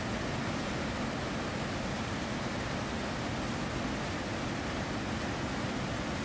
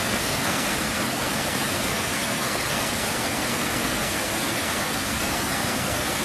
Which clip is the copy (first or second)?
second